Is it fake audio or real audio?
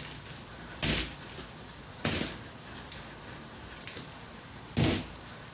real